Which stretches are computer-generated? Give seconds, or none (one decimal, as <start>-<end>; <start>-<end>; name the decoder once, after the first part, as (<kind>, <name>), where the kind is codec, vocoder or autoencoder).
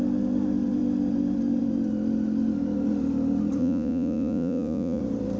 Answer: 3.6-5.0 (vocoder, Vocos)